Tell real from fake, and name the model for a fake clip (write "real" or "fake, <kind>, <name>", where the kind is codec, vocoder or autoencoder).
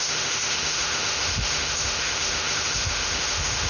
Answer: fake, autoencoder, DAC-VAE